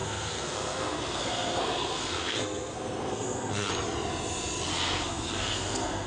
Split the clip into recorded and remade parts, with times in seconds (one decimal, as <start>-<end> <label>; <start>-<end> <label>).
0.0-3.7 remade; 3.7-4.7 recorded; 4.7-6.1 remade